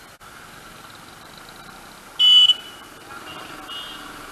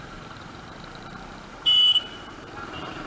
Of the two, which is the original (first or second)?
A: first